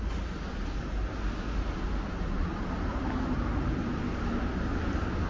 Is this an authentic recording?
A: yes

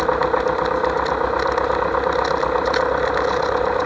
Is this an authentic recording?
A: yes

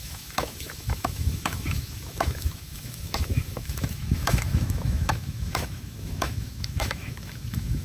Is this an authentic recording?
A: no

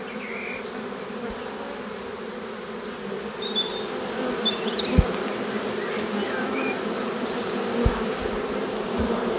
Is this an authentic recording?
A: yes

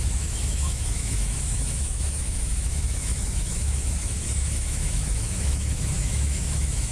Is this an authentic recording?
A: no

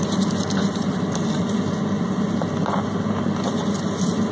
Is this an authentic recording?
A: yes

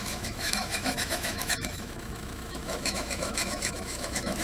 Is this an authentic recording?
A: no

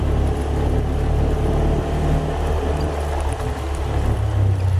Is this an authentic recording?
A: yes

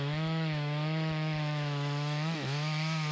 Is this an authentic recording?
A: no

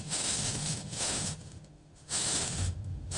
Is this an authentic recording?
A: no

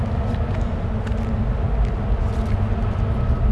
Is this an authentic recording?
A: yes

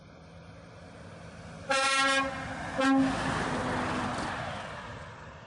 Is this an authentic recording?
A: yes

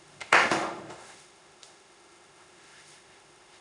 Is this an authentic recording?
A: no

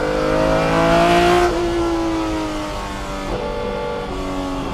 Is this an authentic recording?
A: yes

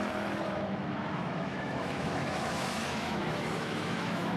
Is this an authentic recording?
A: no